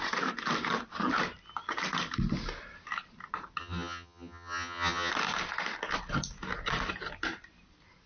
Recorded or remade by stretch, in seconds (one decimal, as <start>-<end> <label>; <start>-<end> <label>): 0.0-3.6 recorded; 3.6-5.1 remade; 5.1-8.1 recorded